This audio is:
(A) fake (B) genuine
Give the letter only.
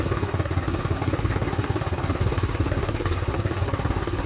A